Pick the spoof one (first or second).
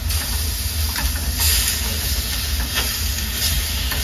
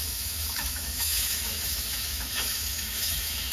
second